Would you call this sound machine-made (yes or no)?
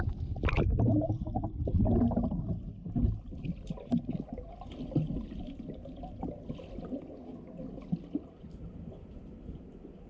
no